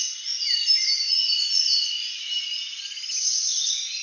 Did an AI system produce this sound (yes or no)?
no